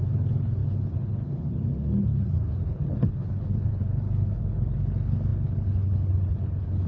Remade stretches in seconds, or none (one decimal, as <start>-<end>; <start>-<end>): 0.0-6.9